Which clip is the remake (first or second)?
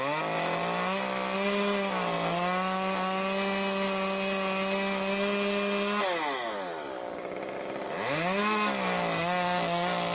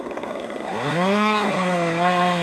second